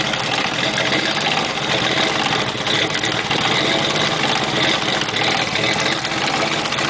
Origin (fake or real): real